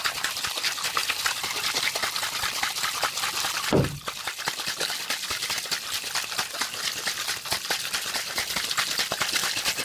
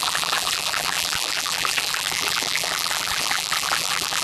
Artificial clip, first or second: second